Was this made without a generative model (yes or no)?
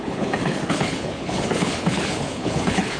no